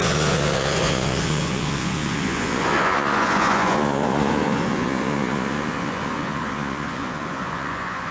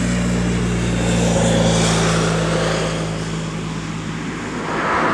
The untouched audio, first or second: second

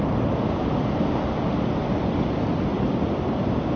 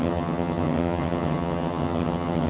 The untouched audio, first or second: first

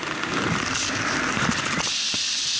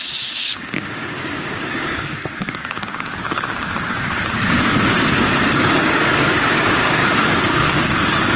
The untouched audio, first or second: first